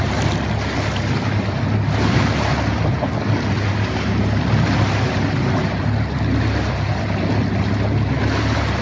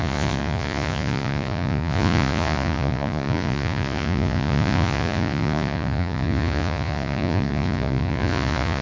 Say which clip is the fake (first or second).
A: second